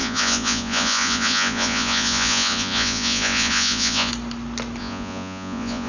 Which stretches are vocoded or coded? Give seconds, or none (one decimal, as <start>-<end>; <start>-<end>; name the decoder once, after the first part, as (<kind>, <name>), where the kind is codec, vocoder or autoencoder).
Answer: 0.0-4.1 (vocoder, Vocos); 4.8-5.9